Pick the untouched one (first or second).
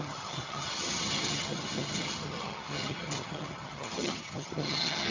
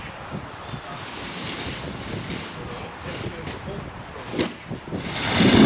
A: second